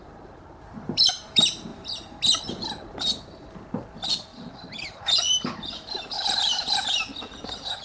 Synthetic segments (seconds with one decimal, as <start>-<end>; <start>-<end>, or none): 0.0-1.7; 2.4-7.1